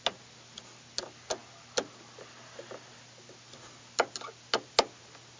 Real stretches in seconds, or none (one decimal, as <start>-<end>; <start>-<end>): 0.0-5.4